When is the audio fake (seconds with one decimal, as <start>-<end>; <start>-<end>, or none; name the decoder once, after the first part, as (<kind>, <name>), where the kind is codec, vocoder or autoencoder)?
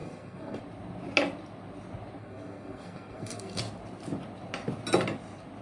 0.0-0.6 (codec, SNAC); 2.2-3.6